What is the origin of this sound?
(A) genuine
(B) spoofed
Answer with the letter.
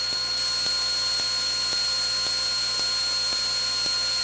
A